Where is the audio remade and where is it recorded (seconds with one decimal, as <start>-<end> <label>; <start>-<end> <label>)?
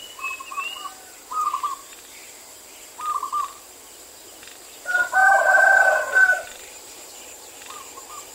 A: 0.0-5.2 recorded; 5.2-7.5 remade; 7.5-8.3 recorded